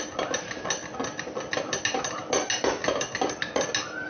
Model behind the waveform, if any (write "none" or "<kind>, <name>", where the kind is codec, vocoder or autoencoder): none